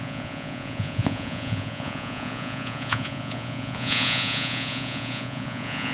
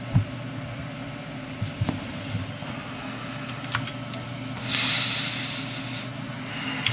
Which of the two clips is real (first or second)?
second